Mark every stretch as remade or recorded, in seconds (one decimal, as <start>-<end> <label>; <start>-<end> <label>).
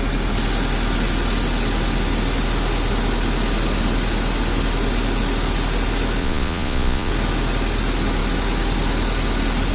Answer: 0.0-6.2 recorded; 6.2-7.1 remade; 7.1-9.7 recorded